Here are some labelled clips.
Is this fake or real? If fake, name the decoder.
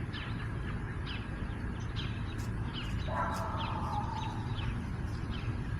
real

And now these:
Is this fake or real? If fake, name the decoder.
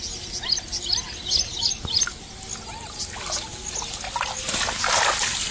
real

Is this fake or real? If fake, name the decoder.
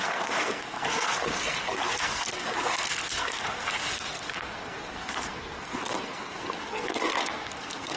fake, codec, SNAC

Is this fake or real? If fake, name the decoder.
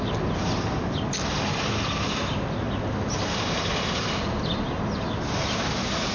real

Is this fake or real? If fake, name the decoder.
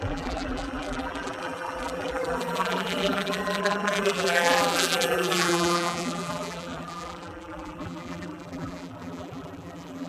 fake, vocoder, BigVGAN v2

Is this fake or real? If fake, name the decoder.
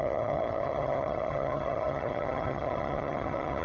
fake, vocoder, HiFi-GAN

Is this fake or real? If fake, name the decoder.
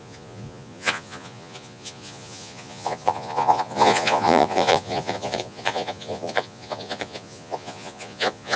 fake, vocoder, Vocos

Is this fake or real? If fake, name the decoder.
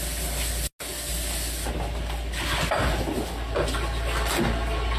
real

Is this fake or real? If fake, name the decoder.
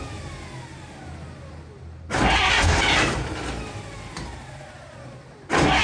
real